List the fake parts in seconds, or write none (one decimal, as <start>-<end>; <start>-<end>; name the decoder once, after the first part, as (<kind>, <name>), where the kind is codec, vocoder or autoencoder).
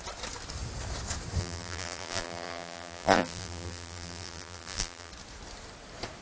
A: 1.4-5.1 (vocoder, BigVGAN v2)